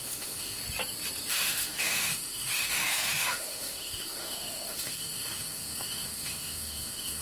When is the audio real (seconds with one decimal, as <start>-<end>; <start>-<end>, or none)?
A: 0.6-1.3